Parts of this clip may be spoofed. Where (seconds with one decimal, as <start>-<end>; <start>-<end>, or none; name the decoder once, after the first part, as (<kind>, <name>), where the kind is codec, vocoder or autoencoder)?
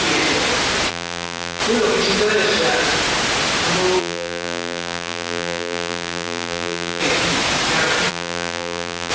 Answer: 0.9-1.6 (vocoder, BigVGAN v2); 4.0-7.0; 8.1-9.1